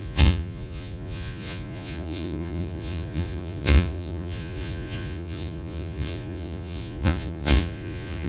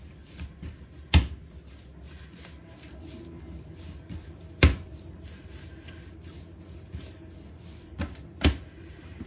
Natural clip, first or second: second